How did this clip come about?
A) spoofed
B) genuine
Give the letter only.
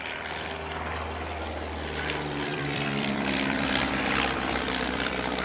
A